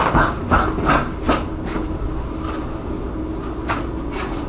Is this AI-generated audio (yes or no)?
no